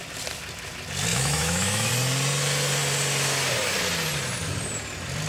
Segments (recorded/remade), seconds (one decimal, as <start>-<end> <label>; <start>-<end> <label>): 0.0-1.1 recorded; 1.1-1.9 remade; 1.9-5.3 recorded